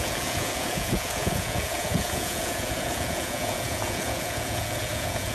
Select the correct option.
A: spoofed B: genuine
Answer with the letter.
A